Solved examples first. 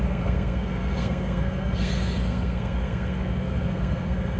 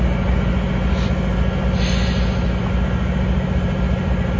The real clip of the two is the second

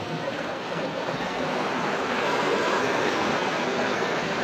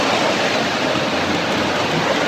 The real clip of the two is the second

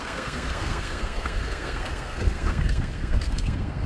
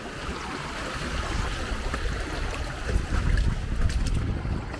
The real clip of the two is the second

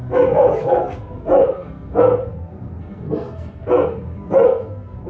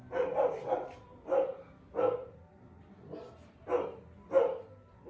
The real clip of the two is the second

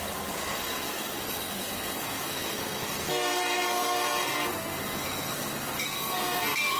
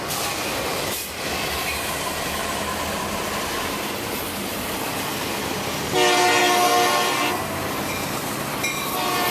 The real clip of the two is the second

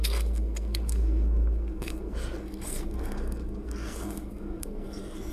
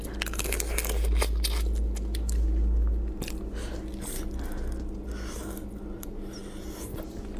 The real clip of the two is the second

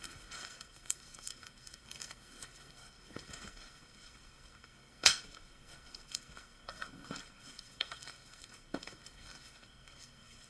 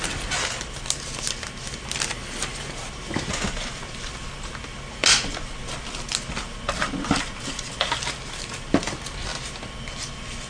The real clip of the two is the second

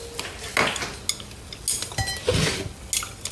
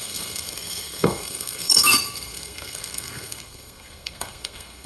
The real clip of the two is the first